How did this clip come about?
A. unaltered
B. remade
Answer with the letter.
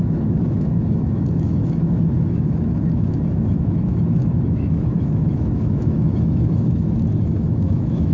B